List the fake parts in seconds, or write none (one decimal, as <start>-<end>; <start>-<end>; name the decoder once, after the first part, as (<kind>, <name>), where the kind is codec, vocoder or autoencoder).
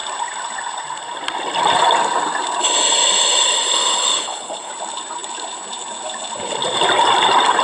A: 4.1-4.7 (codec, HILCodec)